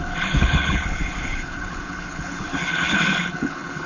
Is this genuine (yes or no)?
no